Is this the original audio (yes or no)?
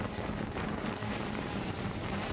no